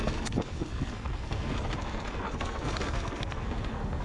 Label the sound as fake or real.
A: fake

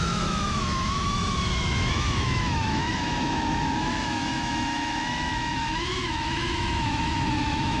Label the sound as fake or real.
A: fake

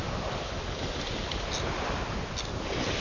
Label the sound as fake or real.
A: real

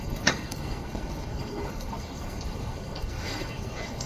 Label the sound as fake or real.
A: fake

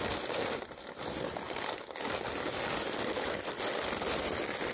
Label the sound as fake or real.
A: real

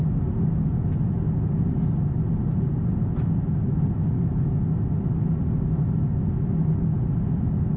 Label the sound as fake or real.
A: real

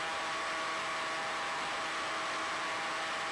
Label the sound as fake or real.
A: real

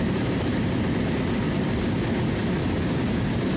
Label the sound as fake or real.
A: real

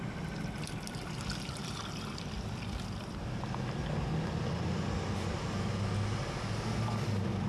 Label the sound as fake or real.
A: real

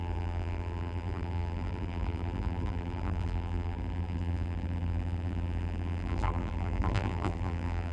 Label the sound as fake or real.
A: fake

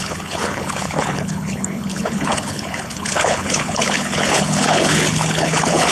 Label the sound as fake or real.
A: fake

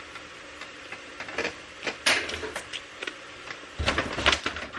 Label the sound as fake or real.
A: real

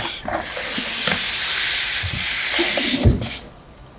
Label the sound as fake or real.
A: real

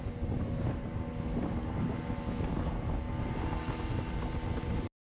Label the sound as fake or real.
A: real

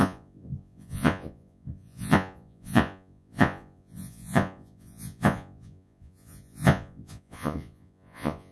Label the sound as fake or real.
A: fake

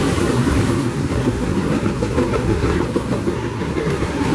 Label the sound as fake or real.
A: fake